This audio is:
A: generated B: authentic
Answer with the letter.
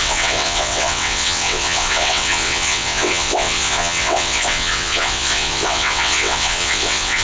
A